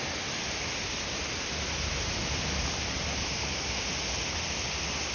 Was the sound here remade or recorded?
recorded